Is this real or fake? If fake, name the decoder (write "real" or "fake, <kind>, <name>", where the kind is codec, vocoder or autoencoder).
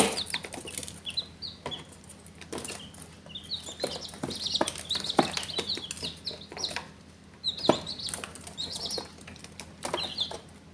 real